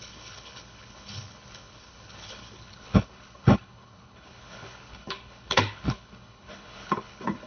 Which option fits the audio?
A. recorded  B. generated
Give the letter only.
B